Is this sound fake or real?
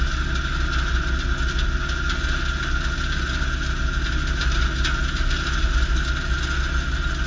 real